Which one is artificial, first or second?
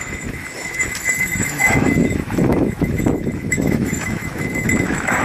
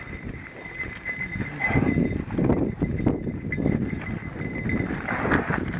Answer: first